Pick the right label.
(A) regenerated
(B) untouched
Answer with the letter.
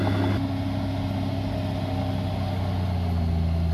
B